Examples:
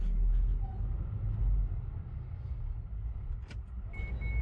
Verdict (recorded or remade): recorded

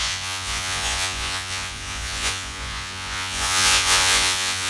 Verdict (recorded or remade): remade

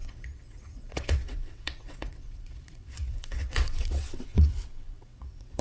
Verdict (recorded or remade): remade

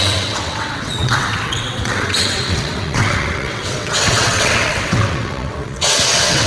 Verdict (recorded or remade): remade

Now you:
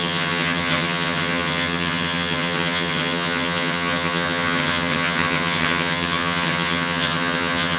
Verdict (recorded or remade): remade